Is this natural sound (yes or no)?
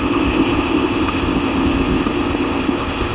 no